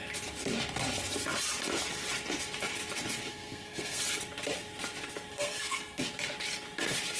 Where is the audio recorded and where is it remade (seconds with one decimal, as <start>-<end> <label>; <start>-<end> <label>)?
0.0-3.3 recorded; 3.3-4.0 remade; 4.0-5.3 recorded; 5.3-6.0 remade; 6.0-7.2 recorded